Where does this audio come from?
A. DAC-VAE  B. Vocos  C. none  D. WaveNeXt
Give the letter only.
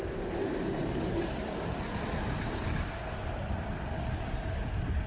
C